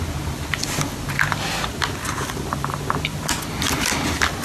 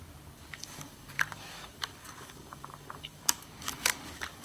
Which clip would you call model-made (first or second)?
second